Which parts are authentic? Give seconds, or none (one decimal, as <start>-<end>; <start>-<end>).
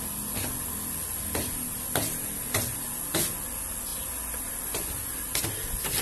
0.0-6.0